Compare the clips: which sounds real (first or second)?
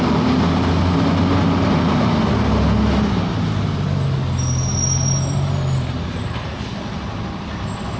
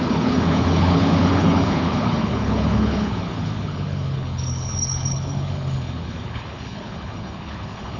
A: first